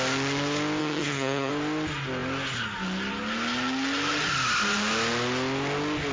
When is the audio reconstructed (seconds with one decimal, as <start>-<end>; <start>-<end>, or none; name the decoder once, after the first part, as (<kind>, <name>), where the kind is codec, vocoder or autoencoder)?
0.8-1.5 (vocoder, HiFi-GAN)